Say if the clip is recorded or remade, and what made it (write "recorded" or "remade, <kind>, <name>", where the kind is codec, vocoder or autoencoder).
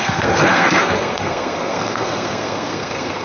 remade, codec, SNAC